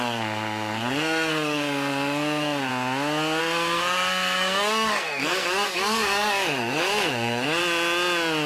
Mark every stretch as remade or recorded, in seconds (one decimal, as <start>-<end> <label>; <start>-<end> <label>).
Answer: 0.0-2.7 remade; 2.7-3.4 recorded; 3.4-7.6 remade; 7.6-8.5 recorded